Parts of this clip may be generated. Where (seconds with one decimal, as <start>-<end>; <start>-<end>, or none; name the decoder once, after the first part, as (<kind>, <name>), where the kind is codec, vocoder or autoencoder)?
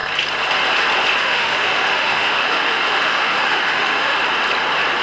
1.2-4.2 (autoencoder, DAC-VAE)